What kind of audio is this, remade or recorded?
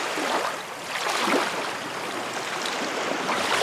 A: recorded